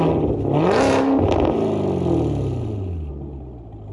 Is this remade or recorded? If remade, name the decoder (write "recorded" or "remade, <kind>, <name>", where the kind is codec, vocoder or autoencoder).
recorded